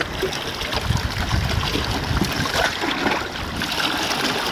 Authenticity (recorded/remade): recorded